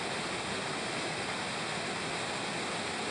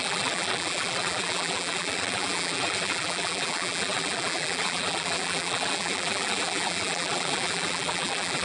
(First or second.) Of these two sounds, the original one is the first